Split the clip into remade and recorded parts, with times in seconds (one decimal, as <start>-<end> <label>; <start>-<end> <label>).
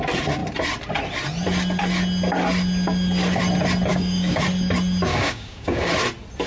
0.0-3.9 recorded; 3.9-4.4 remade; 4.4-5.1 recorded; 5.1-5.9 remade; 5.9-6.5 recorded